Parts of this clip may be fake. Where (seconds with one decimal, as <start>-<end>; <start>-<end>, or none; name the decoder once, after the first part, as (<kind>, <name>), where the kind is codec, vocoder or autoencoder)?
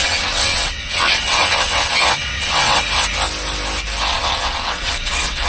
0.0-2.8 (vocoder, WaveNeXt); 4.1-5.5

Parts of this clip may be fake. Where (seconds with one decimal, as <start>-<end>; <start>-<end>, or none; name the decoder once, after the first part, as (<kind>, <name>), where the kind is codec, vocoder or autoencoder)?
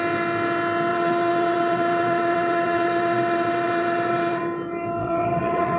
0.9-4.4 (vocoder, WaveNeXt); 5.0-5.8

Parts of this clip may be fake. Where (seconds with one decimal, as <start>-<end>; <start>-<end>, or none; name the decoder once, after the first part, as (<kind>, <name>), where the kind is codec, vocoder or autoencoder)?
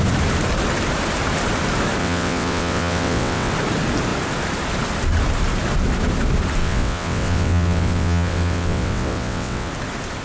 2.0-3.5 (vocoder, WaveNeXt); 6.6-9.7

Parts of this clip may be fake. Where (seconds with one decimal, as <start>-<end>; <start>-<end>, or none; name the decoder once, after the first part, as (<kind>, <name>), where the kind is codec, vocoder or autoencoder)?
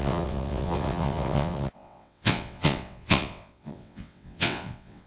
0.0-5.1 (vocoder, WaveNeXt)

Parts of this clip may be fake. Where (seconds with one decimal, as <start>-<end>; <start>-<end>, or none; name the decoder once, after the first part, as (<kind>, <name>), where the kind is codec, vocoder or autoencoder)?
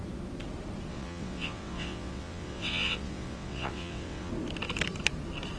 0.9-4.3 (vocoder, WaveNeXt)